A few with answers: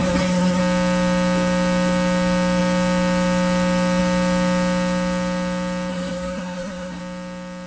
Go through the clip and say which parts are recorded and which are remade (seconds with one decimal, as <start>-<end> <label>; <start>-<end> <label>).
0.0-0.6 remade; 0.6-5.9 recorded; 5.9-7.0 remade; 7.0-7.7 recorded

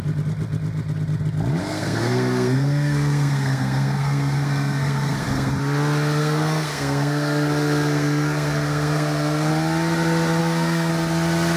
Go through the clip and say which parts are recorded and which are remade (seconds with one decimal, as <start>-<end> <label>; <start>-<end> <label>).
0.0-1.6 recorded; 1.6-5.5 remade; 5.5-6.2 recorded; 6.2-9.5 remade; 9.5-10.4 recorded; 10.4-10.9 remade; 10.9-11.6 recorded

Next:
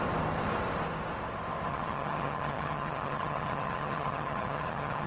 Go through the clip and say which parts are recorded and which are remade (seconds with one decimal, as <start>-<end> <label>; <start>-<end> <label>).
0.0-1.7 recorded; 1.7-5.1 remade